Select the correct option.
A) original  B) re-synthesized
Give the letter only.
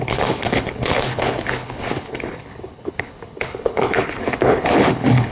B